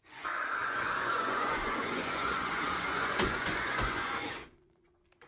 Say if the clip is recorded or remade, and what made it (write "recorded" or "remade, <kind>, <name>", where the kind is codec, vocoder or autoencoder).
remade, vocoder, Vocos